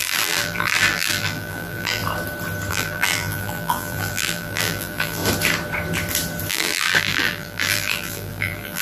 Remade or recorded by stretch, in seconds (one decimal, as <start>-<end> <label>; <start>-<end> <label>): 0.0-2.0 remade; 2.0-2.7 recorded; 2.7-5.2 remade; 5.2-6.5 recorded; 6.5-8.8 remade